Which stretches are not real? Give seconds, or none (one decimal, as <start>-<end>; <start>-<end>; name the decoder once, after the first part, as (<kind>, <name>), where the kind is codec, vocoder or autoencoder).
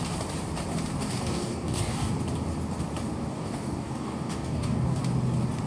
1.0-2.1 (codec, DAC); 3.3-5.0